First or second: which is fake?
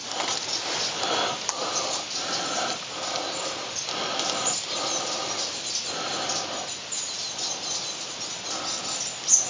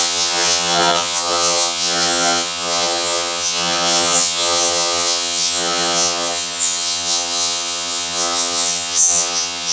second